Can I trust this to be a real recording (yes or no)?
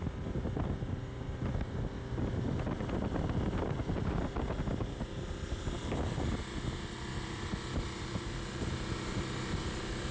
yes